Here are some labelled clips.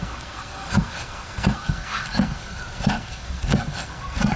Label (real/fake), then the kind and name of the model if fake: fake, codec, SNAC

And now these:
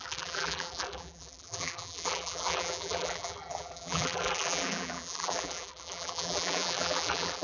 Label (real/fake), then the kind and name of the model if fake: fake, vocoder, BigVGAN v2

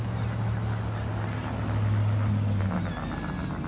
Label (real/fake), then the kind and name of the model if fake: real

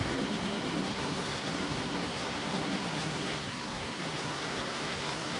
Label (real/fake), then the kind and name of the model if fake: fake, codec, SNAC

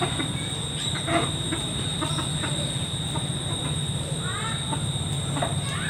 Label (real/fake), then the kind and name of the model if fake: real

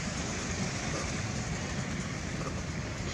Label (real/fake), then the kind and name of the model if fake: fake, vocoder, BigVGAN v2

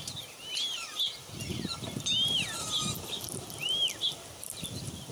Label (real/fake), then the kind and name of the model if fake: real